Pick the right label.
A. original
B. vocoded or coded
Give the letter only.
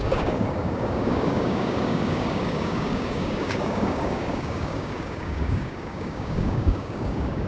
B